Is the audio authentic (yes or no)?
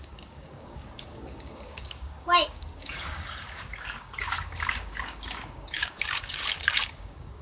no